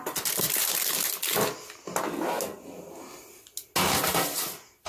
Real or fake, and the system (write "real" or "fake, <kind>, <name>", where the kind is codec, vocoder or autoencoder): real